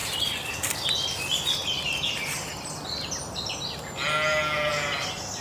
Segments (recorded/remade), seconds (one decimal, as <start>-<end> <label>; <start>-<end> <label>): 0.0-5.4 recorded